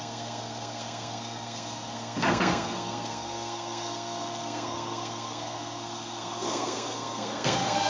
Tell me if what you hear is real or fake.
fake